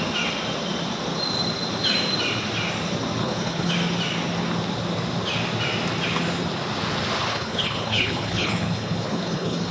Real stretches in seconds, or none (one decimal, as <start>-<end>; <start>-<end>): 0.0-3.2; 3.7-7.3